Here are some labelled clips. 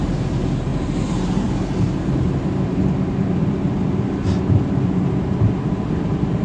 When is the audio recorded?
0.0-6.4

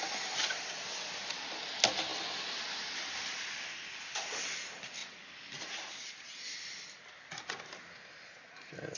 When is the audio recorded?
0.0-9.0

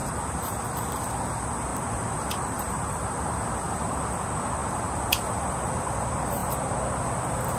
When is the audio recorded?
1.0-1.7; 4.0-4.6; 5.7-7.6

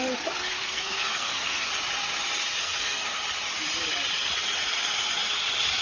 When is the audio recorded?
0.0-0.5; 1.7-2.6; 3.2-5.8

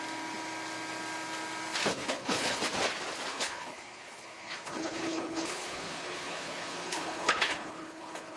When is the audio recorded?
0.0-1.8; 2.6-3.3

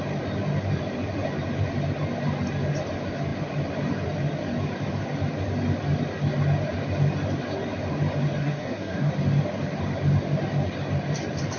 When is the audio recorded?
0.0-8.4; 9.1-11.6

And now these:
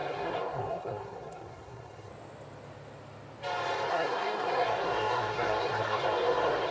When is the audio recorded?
2.1-3.9

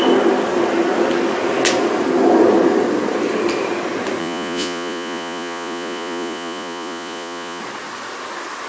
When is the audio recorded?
0.0-4.2; 7.6-8.7